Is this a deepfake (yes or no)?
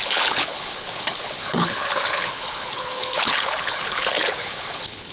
yes